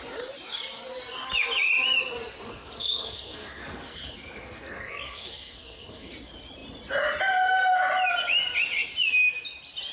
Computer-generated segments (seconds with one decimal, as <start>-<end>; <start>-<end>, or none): 2.5-6.1